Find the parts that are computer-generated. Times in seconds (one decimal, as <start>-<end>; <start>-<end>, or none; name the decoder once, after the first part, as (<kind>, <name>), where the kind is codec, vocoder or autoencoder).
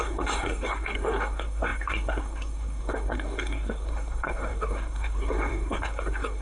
0.0-6.4 (codec, SNAC)